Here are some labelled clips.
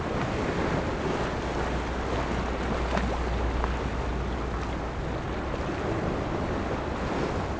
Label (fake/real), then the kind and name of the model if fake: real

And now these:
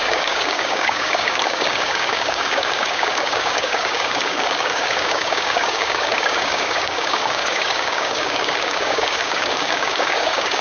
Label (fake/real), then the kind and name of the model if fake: fake, codec, DAC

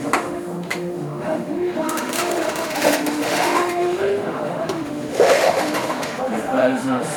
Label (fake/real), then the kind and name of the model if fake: fake, autoencoder, DAC-VAE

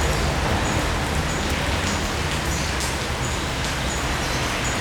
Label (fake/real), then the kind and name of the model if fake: real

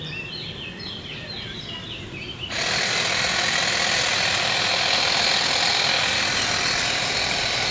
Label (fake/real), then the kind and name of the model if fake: real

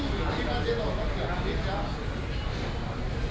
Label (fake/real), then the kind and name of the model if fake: real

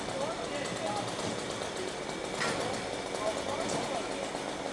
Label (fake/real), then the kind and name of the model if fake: real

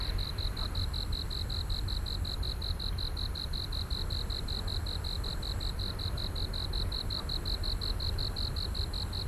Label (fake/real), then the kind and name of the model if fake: real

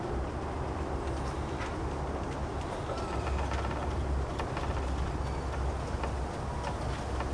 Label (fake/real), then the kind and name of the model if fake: real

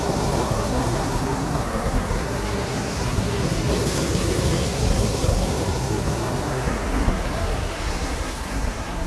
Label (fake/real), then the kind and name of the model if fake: fake, codec, SNAC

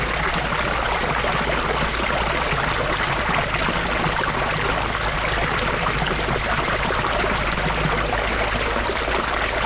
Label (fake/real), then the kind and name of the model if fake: real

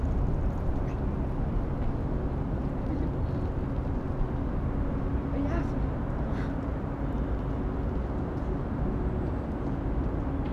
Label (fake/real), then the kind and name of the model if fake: real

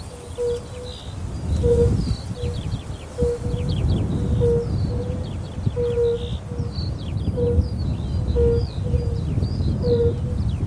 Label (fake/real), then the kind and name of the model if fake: real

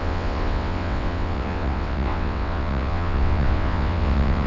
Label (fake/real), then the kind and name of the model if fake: fake, vocoder, WaveNeXt